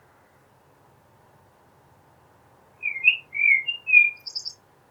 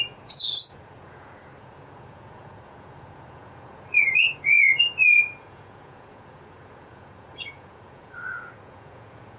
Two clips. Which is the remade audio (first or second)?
second